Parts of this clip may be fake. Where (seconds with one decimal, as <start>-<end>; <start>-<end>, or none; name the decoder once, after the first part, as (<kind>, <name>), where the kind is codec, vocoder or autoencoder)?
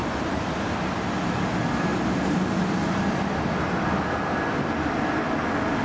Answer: none